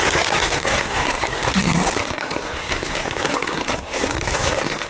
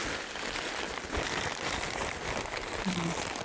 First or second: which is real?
second